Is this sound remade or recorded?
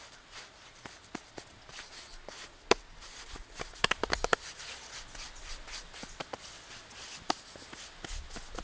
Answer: recorded